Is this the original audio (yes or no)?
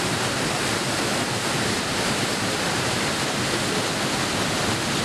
yes